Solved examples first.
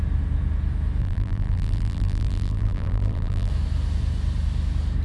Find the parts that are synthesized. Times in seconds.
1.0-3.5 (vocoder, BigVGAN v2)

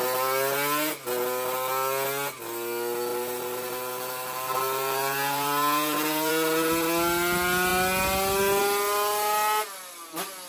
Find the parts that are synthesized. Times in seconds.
3.1-6.3 (vocoder, BigVGAN v2)

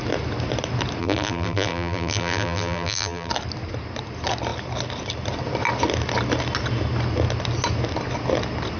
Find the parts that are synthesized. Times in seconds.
1.0-3.3 (vocoder, BigVGAN v2)